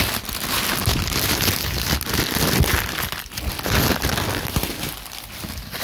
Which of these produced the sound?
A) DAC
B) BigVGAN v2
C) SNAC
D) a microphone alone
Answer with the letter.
D